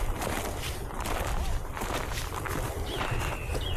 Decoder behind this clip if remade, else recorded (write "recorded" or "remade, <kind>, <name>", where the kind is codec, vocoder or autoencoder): recorded